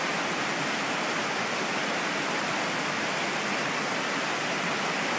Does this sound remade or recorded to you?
recorded